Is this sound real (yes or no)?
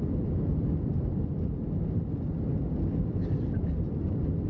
yes